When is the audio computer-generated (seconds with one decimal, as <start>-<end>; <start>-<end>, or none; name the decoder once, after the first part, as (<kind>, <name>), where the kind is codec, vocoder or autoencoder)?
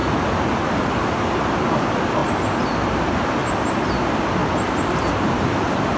1.1-2.2 (vocoder, BigVGAN v2); 3.0-3.4; 4.0-6.0